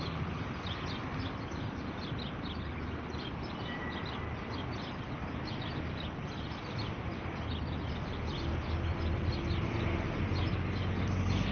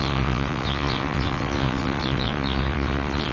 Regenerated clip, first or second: second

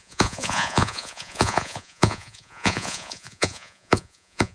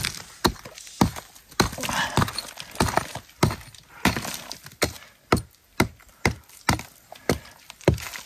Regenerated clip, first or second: first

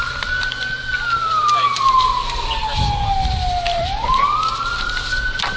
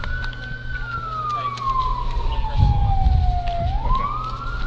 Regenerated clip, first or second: first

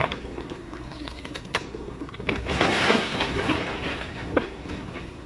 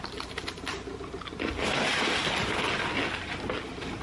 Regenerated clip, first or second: first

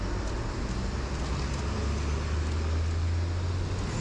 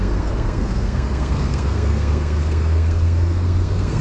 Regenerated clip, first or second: second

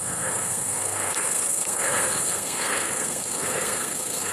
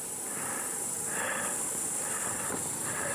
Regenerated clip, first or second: first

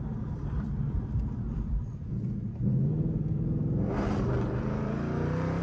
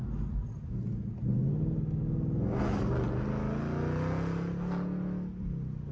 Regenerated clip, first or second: first